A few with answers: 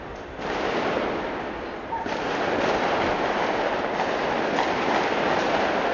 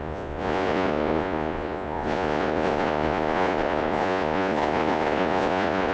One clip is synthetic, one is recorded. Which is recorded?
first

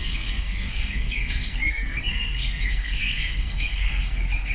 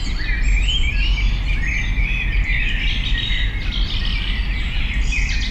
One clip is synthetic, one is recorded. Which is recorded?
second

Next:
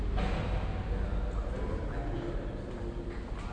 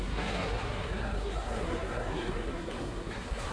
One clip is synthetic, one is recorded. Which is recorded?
first